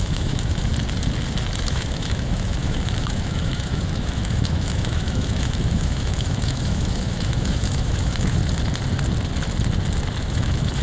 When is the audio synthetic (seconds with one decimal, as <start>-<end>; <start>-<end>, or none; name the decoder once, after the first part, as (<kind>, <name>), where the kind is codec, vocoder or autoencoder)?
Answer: 0.0-0.7 (autoencoder, DAC-VAE); 1.7-8.4; 10.2-10.8